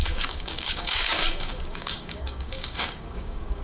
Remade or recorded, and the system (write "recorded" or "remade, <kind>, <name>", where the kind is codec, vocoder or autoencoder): remade, codec, DAC